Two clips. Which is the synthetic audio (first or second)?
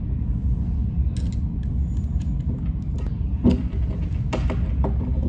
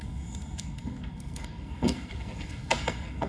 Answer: second